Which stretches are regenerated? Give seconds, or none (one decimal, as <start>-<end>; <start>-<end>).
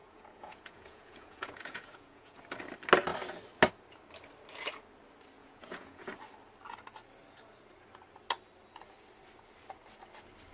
0.0-2.4; 5.4-6.1